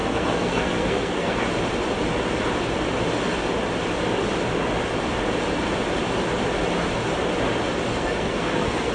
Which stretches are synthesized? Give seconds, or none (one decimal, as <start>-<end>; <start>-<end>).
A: 0.0-1.4; 7.9-8.9